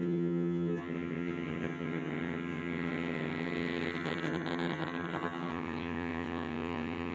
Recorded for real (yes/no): no